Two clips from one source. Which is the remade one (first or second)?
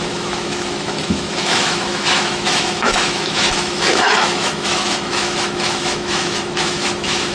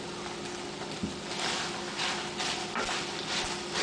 first